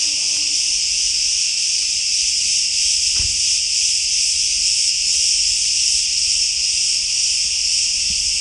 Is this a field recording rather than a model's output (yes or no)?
yes